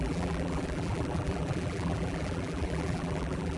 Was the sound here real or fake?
fake